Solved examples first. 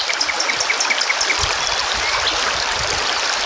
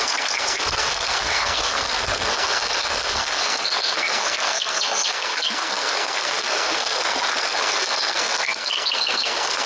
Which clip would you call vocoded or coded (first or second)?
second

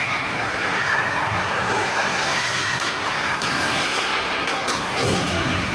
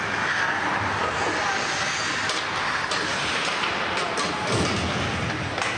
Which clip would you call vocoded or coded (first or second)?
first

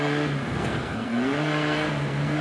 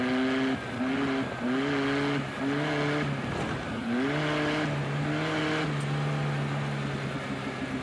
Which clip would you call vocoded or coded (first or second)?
first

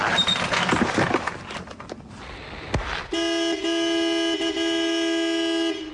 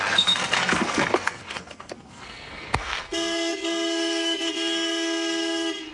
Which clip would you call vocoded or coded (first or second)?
second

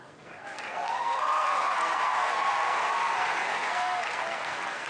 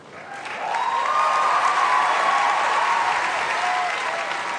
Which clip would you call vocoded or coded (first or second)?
first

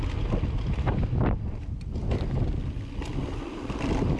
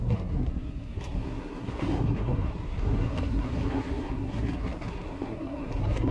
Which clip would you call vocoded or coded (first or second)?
second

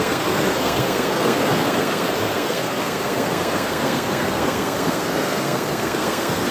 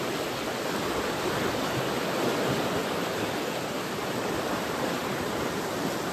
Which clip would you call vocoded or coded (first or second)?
first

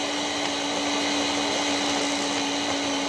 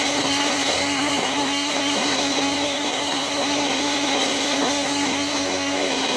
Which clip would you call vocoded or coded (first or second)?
second